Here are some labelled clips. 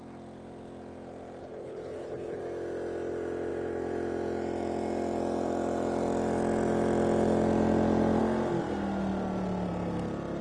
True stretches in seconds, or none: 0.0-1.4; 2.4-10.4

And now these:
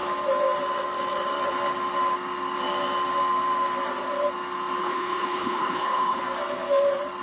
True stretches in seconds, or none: 0.0-4.8; 6.2-7.2

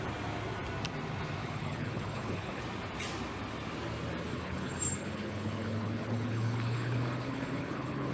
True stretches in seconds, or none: 0.0-1.4; 2.6-4.3

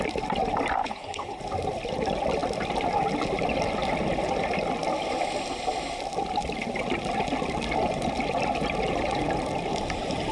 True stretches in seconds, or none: 0.0-0.8; 1.4-10.3

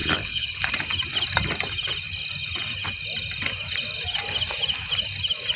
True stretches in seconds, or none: 0.7-5.6